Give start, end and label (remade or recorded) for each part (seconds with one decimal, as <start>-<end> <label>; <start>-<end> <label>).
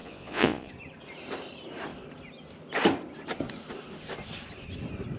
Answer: 0.0-0.7 remade; 0.7-5.2 recorded